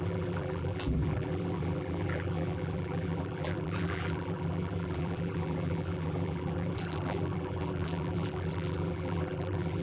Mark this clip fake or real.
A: fake